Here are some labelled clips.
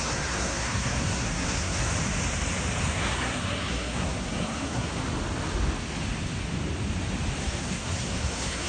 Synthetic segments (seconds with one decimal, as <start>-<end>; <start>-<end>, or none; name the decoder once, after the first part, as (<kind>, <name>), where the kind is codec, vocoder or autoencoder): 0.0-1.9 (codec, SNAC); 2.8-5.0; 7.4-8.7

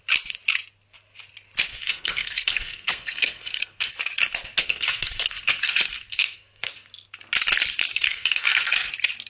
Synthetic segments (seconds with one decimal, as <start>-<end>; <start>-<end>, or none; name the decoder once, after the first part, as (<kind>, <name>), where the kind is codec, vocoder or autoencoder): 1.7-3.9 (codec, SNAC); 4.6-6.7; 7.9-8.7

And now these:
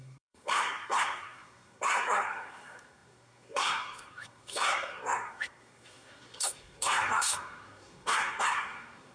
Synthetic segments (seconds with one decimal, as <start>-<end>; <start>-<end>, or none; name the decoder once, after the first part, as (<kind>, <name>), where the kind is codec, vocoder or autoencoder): 0.0-9.1 (codec, SNAC)